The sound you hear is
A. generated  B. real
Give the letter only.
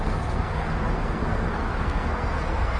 A